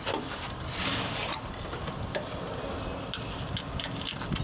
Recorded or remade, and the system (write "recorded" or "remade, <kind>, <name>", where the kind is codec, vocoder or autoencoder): recorded